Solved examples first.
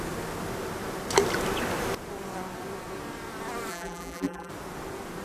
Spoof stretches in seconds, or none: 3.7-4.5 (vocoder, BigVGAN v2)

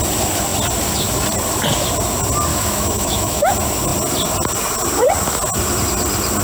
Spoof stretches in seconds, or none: 2.5-3.5 (autoencoder, DAC-VAE)

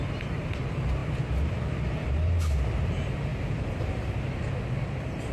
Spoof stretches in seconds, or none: 3.3-3.9 (vocoder, BigVGAN v2)